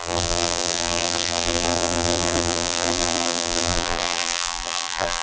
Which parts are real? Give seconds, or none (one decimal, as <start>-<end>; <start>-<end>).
none